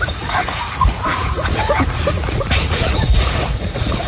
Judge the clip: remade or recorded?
remade